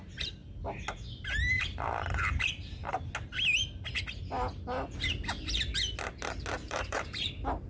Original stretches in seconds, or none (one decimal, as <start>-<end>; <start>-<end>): 0.0-6.6; 7.3-7.7